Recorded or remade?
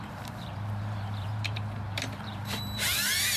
remade